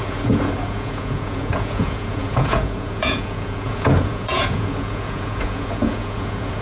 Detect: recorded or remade remade